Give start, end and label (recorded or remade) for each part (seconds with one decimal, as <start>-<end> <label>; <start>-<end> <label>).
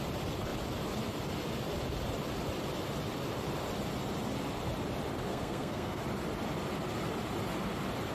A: 0.0-5.3 recorded; 5.3-6.0 remade; 6.0-8.1 recorded